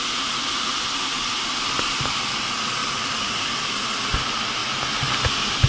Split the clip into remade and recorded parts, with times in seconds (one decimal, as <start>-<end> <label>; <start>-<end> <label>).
0.0-2.8 recorded; 2.8-3.7 remade; 3.7-5.7 recorded